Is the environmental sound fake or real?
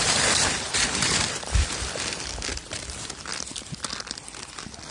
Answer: fake